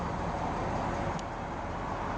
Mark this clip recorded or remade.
recorded